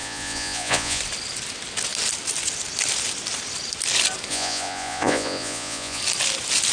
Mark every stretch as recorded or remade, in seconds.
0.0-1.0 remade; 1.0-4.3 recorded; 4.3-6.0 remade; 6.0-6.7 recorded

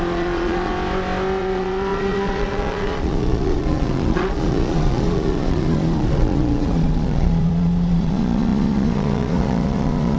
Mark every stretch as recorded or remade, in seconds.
0.0-0.7 remade; 0.7-1.4 recorded; 1.4-10.2 remade

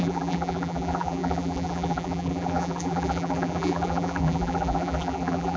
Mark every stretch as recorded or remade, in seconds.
0.0-5.6 remade

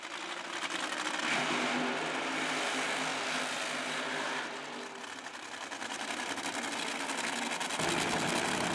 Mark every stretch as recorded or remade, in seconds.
0.0-3.1 recorded; 3.1-6.4 remade; 6.4-8.7 recorded

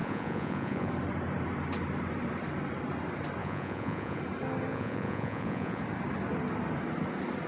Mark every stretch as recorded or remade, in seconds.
0.0-0.9 remade; 0.9-3.4 recorded; 3.4-4.2 remade; 4.2-4.7 recorded; 4.7-5.8 remade; 5.8-7.5 recorded

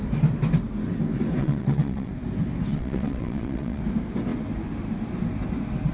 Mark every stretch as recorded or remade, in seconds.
0.0-1.4 recorded; 1.4-2.1 remade; 2.1-2.7 recorded; 2.7-3.8 remade; 3.8-5.9 recorded